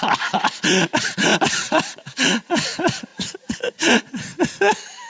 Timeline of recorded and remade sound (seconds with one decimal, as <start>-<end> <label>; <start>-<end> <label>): 0.0-4.3 remade; 4.3-5.1 recorded